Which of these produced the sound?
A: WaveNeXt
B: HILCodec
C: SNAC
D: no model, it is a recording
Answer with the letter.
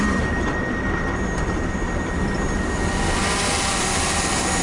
D